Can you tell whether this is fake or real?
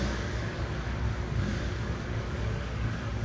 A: fake